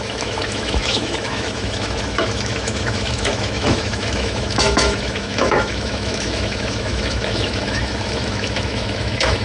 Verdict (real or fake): fake